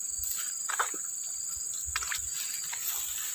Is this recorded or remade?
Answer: recorded